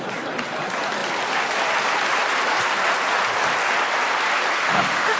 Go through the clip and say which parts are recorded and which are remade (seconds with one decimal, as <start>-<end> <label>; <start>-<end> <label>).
0.0-4.6 recorded; 4.6-5.2 remade